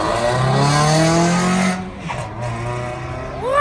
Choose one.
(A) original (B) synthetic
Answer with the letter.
A